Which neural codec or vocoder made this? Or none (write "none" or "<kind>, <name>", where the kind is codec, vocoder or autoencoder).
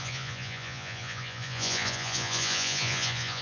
vocoder, Vocos